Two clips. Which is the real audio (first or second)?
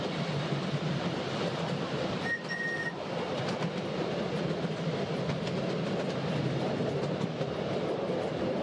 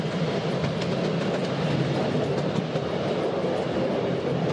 second